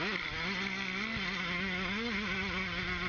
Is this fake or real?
real